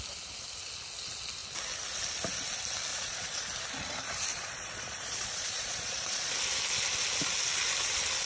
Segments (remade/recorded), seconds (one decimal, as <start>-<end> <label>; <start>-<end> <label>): 0.0-2.9 recorded; 2.9-3.4 remade; 3.4-4.3 recorded; 4.3-6.3 remade; 6.3-8.3 recorded